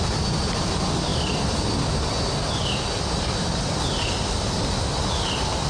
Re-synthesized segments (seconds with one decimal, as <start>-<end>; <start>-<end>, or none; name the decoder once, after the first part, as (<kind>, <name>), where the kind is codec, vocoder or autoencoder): none